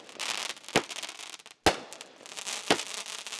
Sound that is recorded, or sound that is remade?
recorded